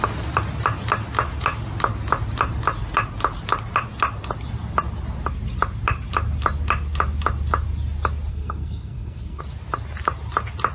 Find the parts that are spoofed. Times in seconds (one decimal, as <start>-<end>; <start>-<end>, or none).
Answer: 8.3-9.4